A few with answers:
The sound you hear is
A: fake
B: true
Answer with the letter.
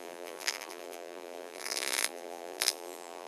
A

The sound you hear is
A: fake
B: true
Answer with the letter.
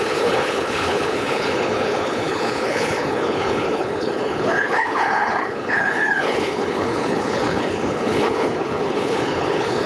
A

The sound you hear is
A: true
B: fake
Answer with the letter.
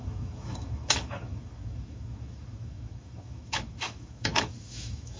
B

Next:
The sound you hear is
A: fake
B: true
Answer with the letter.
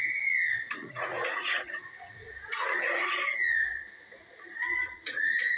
A